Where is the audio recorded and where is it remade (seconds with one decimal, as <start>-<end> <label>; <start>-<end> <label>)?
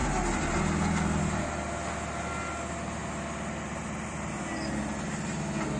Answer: 0.0-5.8 recorded